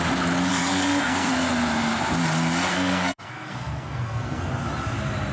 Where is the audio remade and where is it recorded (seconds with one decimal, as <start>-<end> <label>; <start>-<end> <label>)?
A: 0.0-0.5 recorded; 0.5-1.3 remade; 1.3-2.7 recorded; 2.7-4.5 remade; 4.5-5.3 recorded